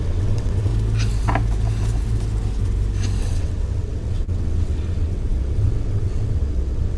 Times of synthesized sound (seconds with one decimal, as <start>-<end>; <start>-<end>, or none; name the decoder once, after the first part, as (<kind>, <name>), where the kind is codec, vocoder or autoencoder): 0.0-0.7 (vocoder, WaveNeXt); 3.2-7.0